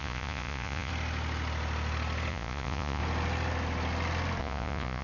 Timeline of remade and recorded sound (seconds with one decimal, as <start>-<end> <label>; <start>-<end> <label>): 0.0-0.9 remade; 0.9-2.3 recorded; 2.3-3.0 remade; 3.0-4.4 recorded; 4.4-5.0 remade